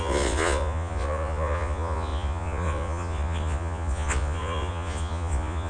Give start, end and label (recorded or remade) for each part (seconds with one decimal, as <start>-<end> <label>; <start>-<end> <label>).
0.0-5.7 remade